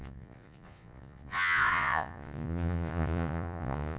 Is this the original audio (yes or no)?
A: no